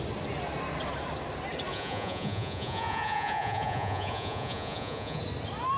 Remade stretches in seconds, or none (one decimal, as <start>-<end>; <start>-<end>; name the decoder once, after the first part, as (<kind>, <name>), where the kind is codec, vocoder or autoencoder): 1.7-5.2 (vocoder, Vocos)